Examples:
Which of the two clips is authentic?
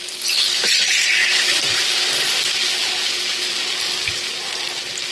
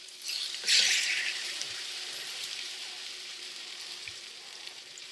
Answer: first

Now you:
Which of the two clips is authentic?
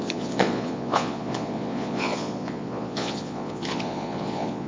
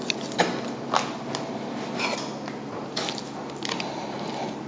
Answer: second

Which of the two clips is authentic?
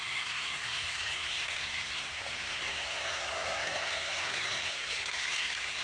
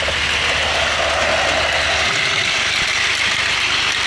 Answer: second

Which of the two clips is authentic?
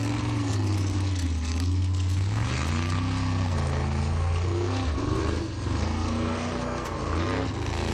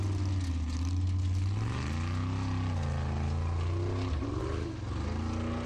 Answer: second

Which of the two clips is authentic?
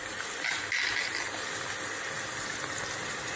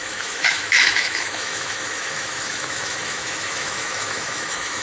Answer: first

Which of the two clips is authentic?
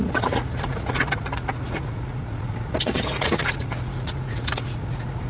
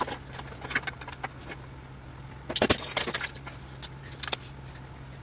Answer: second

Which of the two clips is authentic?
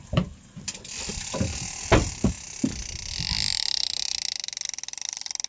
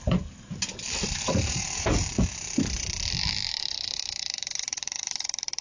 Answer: first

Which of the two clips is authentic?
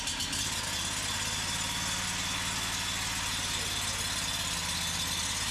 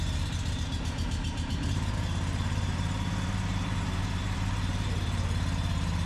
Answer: first